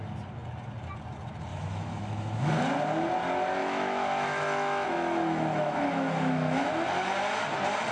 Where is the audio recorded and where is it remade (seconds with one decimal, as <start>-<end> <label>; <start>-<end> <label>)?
0.0-1.5 recorded; 1.5-2.5 remade; 2.5-3.6 recorded; 3.6-6.7 remade; 6.7-7.9 recorded